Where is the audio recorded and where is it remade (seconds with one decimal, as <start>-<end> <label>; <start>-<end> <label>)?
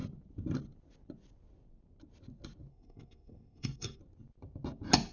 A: 0.0-2.7 recorded; 2.7-4.0 remade; 4.0-5.1 recorded